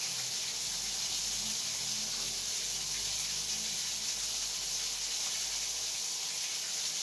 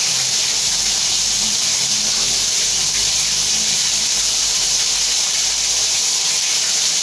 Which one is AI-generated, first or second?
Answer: second